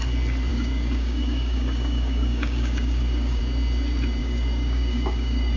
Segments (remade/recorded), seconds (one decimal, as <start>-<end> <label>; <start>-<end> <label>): 0.0-0.5 recorded; 0.5-3.4 remade; 3.4-4.2 recorded; 4.2-5.6 remade